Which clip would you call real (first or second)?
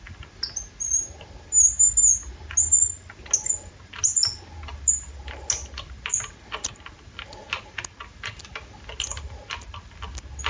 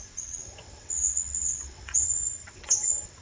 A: first